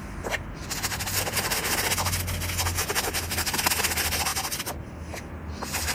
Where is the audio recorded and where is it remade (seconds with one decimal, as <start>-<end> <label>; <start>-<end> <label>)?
0.0-5.9 recorded